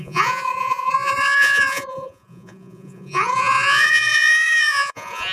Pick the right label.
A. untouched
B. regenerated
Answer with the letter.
B